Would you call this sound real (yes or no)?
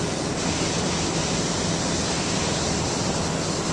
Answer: yes